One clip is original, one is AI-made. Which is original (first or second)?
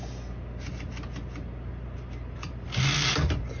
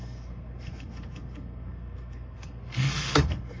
first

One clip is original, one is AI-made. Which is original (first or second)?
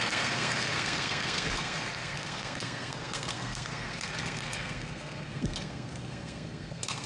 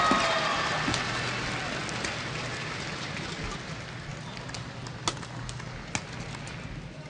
second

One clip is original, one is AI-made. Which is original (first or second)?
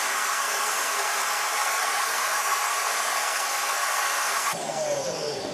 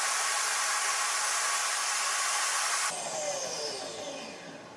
second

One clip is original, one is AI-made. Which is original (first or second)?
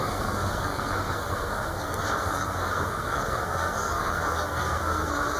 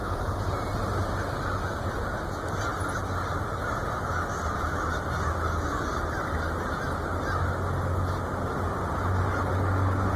second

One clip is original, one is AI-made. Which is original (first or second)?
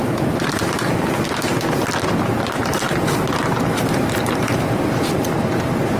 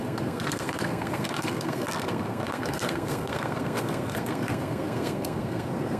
first